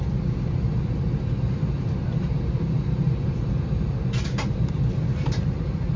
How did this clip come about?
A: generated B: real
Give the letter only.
B